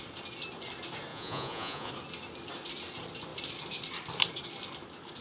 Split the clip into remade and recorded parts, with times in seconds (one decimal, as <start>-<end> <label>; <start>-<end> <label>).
0.0-1.1 recorded; 1.1-1.9 remade; 1.9-5.2 recorded